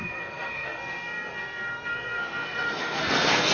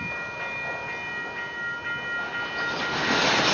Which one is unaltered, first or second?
second